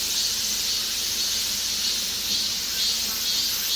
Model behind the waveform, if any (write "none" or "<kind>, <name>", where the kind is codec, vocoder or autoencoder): none